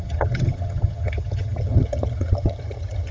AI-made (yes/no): yes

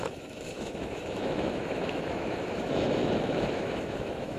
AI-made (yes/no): yes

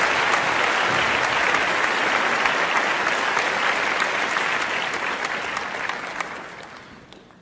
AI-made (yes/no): no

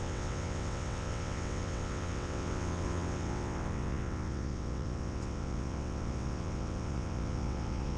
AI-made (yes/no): yes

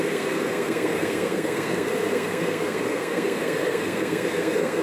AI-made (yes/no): yes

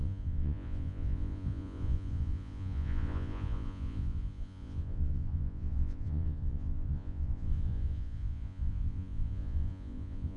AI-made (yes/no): yes